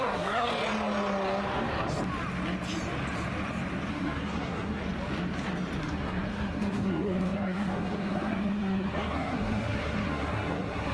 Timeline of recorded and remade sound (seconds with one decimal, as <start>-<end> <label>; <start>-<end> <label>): 0.0-0.5 remade; 0.5-3.9 recorded; 3.9-4.8 remade; 4.8-5.8 recorded; 5.8-10.9 remade